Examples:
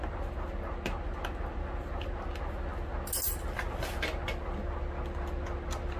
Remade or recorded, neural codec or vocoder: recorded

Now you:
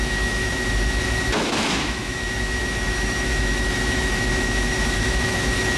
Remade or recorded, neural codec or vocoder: remade, autoencoder, DAC-VAE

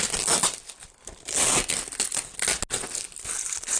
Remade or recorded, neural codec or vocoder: recorded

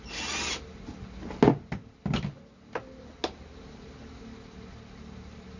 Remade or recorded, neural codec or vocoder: recorded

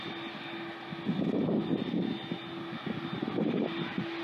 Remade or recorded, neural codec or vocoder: recorded